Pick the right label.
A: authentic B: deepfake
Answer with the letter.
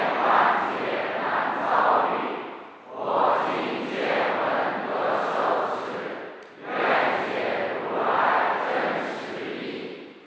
A